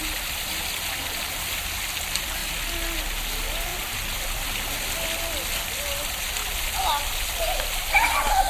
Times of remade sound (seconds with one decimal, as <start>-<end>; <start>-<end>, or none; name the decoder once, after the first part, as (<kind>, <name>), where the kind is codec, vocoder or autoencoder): 0.0-1.5 (vocoder, BigVGAN v2); 3.7-4.5; 6.4-7.2